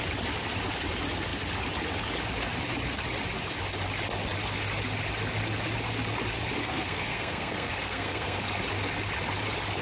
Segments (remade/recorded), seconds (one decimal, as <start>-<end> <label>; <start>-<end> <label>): 0.0-6.6 recorded; 6.6-8.4 remade; 8.4-9.8 recorded

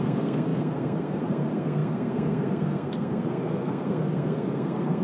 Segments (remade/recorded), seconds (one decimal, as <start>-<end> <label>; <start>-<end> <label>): 0.0-5.0 remade

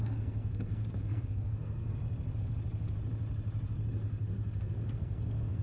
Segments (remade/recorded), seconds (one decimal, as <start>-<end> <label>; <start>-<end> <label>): 0.0-2.0 remade; 2.0-4.6 recorded; 4.6-5.6 remade

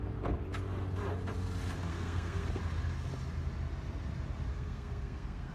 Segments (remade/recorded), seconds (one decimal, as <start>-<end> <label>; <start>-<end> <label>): 0.0-1.9 recorded; 1.9-2.6 remade; 2.6-4.5 recorded; 4.5-5.5 remade